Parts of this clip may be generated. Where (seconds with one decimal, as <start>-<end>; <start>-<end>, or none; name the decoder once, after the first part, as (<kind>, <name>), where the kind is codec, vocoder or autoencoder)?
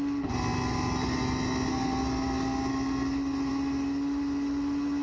none